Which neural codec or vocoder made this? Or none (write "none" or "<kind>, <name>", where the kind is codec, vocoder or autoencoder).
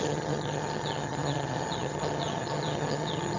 vocoder, HiFi-GAN